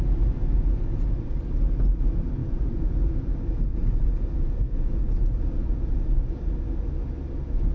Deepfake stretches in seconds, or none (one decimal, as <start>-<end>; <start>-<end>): 2.4-3.3; 3.7-6.1